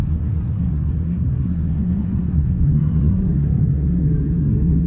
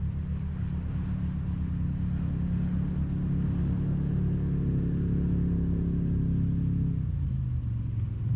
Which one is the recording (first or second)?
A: second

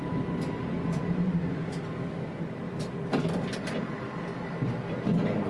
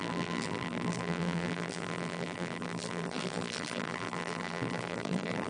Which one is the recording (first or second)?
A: first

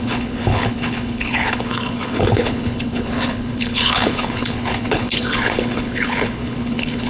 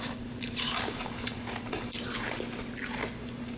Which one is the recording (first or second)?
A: second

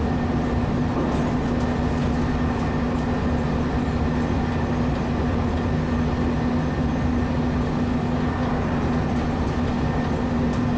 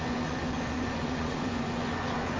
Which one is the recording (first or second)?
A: first